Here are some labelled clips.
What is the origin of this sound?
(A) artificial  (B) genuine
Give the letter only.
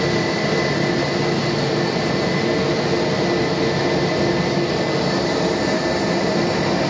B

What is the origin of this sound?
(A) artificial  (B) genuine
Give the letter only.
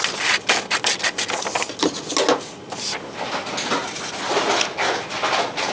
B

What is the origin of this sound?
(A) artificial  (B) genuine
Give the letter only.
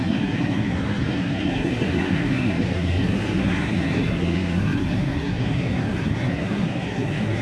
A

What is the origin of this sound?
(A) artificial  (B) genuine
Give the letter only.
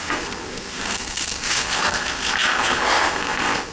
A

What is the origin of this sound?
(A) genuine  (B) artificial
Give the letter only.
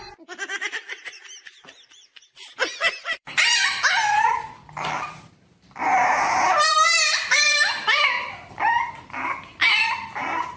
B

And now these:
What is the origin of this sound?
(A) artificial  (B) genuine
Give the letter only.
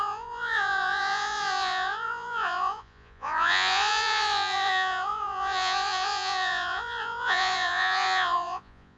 A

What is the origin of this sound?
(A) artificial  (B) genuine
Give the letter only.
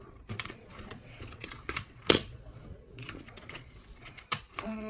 A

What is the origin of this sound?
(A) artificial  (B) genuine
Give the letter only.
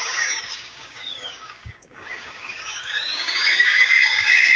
A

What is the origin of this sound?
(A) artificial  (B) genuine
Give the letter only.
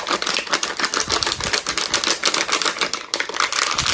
B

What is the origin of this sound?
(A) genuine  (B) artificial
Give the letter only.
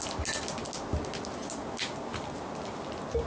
A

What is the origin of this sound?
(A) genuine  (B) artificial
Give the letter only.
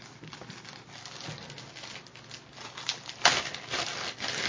A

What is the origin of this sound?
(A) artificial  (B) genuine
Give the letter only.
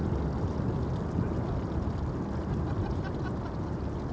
B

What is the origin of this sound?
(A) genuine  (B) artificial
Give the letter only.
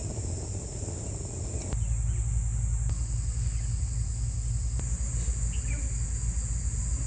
A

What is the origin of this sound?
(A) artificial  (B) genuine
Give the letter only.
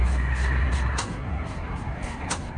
A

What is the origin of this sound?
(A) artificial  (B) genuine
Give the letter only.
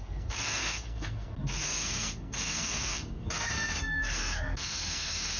A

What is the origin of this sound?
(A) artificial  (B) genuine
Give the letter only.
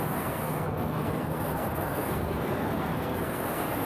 A